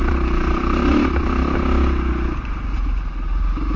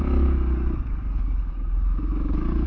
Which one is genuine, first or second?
first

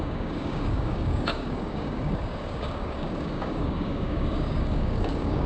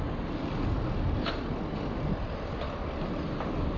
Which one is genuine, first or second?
second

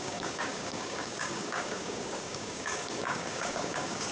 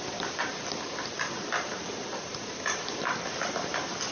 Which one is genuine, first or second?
second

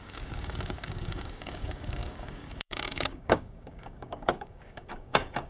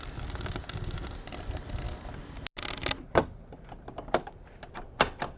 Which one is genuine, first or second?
second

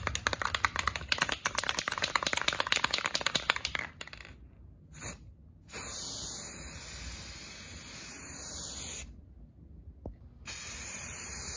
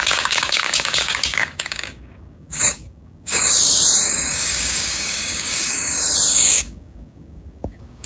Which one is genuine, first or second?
first